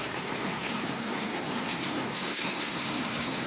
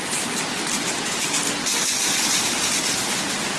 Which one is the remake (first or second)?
first